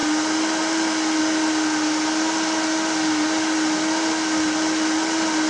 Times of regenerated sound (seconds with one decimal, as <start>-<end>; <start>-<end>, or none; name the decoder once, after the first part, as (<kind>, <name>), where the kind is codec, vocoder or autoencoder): none